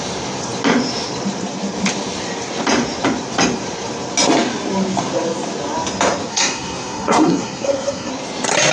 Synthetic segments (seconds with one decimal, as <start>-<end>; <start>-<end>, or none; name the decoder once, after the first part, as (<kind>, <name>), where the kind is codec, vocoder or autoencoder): 6.3-8.1 (codec, SNAC)